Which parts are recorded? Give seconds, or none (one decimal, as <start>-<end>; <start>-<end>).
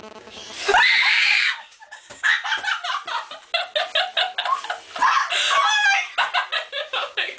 0.4-1.1; 2.3-6.7